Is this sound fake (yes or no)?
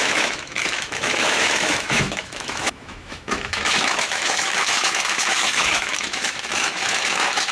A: yes